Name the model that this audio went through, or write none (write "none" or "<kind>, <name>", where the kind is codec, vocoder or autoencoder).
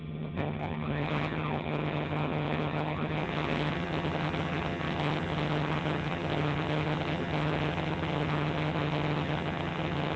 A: vocoder, HiFi-GAN